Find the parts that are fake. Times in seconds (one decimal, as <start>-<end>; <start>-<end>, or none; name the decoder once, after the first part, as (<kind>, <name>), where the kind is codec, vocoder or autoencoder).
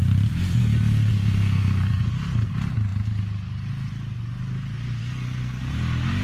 0.6-2.5 (codec, SNAC); 5.0-5.6